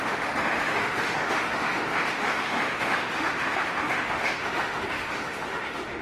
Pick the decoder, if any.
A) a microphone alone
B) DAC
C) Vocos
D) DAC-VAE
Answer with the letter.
D